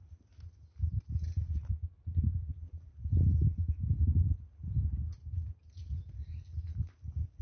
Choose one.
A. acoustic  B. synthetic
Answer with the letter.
A